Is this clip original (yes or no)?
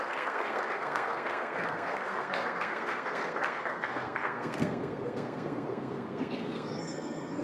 no